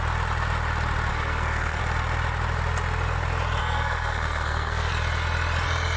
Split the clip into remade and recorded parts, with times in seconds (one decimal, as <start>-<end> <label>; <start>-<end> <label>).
0.0-1.1 recorded; 1.1-1.8 remade; 1.8-3.6 recorded; 3.6-4.9 remade; 4.9-6.0 recorded